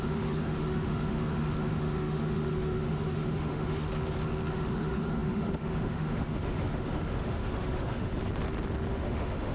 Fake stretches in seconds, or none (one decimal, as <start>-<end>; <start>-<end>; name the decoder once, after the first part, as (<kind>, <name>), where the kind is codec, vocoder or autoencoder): 0.0-3.9 (autoencoder, DAC-VAE); 4.5-8.2; 8.9-9.5

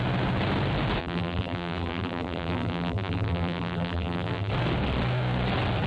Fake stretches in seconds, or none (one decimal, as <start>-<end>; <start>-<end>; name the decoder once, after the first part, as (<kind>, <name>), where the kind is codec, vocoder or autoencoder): 1.0-4.5 (vocoder, BigVGAN v2)

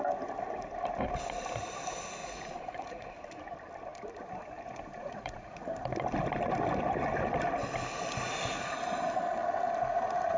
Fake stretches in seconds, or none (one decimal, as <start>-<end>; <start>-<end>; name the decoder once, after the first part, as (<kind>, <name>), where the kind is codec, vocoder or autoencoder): 2.2-3.1 (vocoder, Vocos); 4.9-5.7

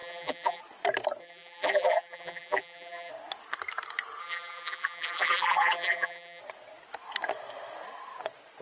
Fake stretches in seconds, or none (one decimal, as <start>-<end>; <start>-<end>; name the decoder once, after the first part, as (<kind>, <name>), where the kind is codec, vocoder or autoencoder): 0.0-0.6 (vocoder, BigVGAN v2); 1.2-3.1; 4.2-6.4

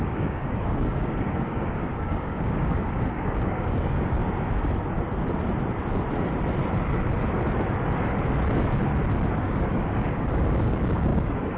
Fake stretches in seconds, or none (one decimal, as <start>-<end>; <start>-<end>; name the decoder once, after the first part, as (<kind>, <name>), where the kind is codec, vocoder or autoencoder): 0.0-4.2 (codec, DAC); 9.4-11.6